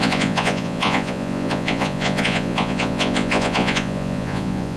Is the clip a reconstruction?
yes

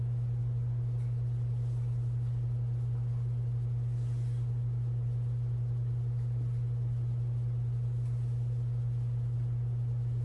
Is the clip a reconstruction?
no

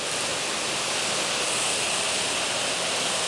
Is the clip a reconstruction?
no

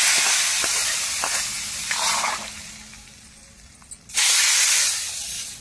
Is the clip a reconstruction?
no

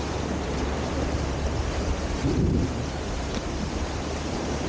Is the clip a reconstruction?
yes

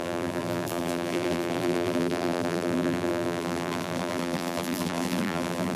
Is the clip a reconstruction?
yes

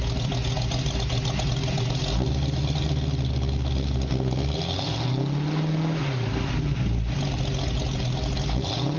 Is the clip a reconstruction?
no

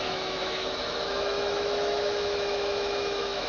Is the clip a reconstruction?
yes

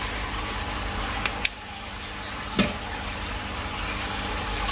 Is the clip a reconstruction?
no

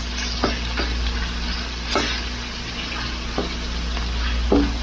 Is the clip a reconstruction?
no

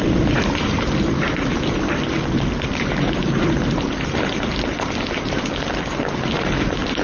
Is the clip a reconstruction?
yes